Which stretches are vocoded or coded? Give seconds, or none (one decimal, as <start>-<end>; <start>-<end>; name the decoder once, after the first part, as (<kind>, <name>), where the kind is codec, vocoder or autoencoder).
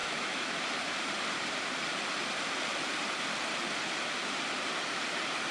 0.0-0.5 (autoencoder, DAC-VAE)